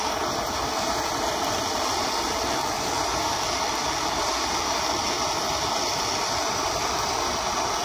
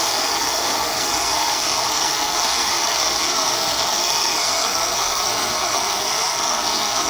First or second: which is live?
first